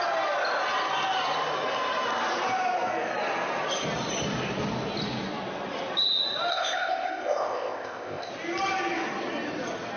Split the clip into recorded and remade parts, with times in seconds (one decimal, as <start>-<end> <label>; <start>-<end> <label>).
0.0-6.5 recorded; 6.5-8.3 remade; 8.3-10.0 recorded